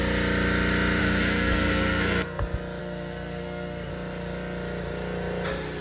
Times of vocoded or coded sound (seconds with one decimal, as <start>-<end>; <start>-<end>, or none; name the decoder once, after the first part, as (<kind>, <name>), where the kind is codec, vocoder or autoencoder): 1.0-2.4 (codec, SNAC); 2.8-3.9